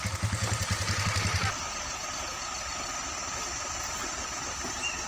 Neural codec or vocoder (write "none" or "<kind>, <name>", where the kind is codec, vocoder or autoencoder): none